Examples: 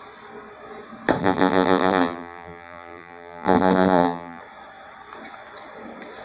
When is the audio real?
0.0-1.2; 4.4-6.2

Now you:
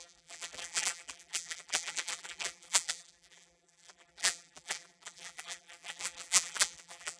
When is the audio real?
none

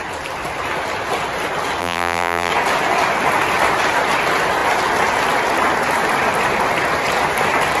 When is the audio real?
0.0-1.8; 2.5-7.8

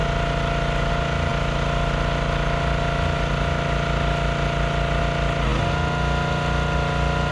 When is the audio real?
0.0-7.3

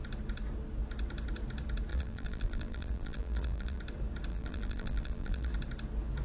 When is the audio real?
0.0-1.9; 3.8-4.3; 5.5-6.2

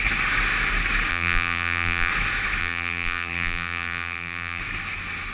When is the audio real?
0.0-1.1; 2.1-2.6; 4.6-5.3

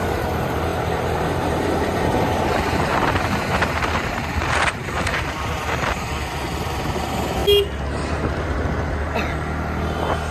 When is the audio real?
6.1-6.6; 7.4-10.3

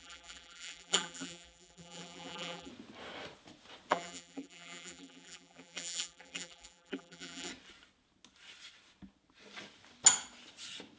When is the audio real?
2.7-3.9; 7.5-11.0